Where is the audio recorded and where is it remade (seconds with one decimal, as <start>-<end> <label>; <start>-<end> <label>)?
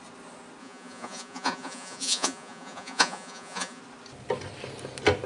0.0-0.6 recorded; 0.6-3.8 remade; 3.8-5.3 recorded